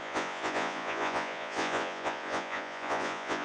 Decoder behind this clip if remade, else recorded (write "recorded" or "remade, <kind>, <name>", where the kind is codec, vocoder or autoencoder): remade, vocoder, Vocos